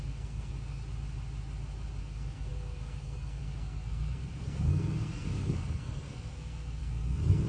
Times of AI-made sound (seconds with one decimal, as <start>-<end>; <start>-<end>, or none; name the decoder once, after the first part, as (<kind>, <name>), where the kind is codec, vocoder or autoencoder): 0.0-0.8 (codec, SNAC); 2.0-7.5